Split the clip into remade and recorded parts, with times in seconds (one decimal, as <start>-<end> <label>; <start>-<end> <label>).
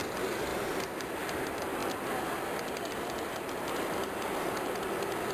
0.0-0.5 recorded; 0.5-1.2 remade; 1.2-5.3 recorded